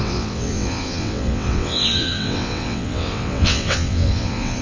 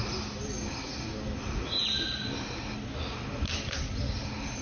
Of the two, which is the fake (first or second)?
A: first